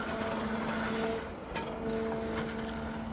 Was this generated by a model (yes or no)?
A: no